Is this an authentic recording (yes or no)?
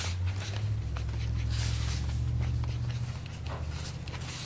yes